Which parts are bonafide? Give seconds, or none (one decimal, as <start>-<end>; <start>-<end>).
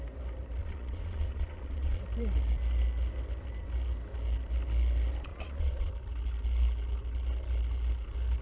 0.0-0.6; 2.0-5.3; 5.9-8.4